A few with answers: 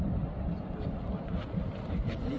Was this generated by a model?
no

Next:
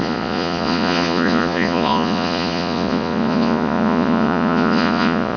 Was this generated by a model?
yes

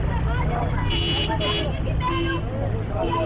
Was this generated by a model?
no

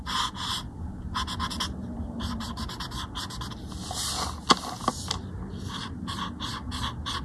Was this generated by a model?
no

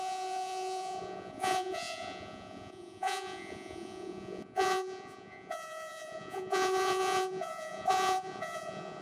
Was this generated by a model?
yes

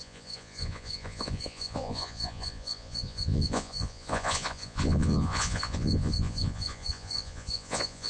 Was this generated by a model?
yes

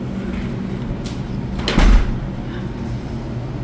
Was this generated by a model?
no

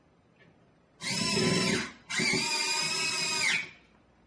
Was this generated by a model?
no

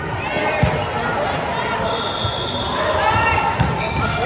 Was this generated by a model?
no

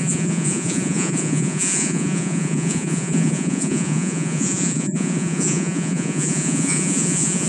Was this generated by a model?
yes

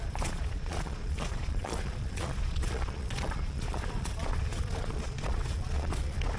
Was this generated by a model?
yes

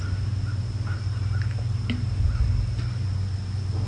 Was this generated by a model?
no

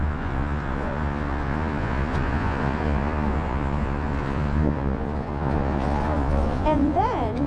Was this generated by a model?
yes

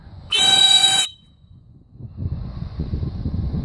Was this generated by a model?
yes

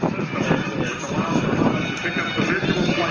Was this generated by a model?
no